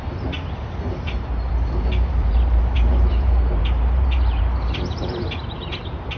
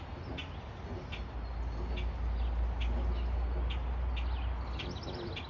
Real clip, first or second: second